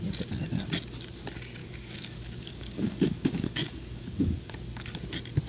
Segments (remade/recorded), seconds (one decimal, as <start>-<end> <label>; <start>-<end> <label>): 0.0-1.6 recorded; 1.6-4.9 remade; 4.9-5.5 recorded